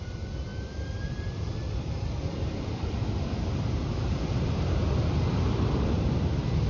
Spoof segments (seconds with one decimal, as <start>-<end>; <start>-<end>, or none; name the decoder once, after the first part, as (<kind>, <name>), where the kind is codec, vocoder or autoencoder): 0.5-3.4 (vocoder, BigVGAN v2); 4.0-5.2